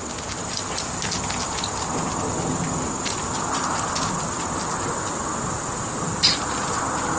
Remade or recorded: recorded